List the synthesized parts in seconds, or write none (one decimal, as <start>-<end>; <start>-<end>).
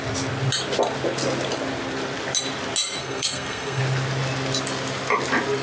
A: 3.0-3.8